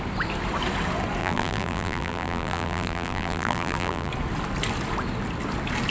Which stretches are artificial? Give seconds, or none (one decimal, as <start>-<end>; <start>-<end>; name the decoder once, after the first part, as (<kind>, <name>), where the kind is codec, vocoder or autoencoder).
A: 1.2-4.1 (vocoder, BigVGAN v2)